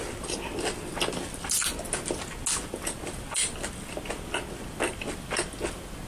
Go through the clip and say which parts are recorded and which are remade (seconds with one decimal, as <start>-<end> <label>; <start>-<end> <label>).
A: 0.0-6.1 recorded